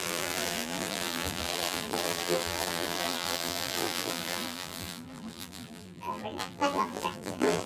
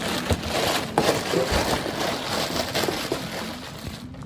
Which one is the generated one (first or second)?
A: first